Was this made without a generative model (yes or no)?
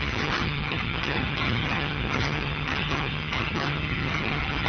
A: no